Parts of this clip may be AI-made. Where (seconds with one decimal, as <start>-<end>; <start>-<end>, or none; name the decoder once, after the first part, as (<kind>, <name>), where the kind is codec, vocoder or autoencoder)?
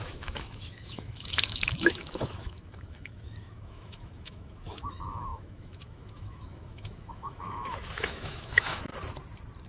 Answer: 0.0-8.9 (autoencoder, DAC-VAE)